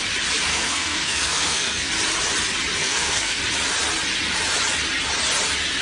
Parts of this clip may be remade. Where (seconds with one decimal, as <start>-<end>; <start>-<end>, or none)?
0.5-1.9; 2.8-3.4